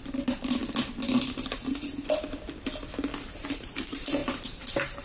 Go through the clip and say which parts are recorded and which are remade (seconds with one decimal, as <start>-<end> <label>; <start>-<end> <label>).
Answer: 0.0-0.6 remade; 0.6-3.4 recorded; 3.4-5.0 remade